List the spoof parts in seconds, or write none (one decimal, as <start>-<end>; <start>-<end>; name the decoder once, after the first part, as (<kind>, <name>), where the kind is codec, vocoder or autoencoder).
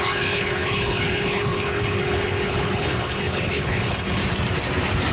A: 0.0-4.2 (codec, HILCodec)